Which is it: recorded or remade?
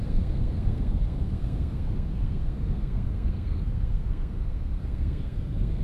remade